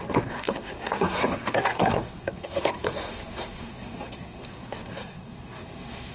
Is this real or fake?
fake